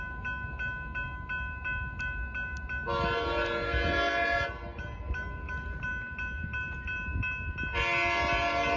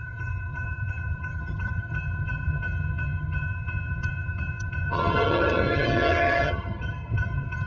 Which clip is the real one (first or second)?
first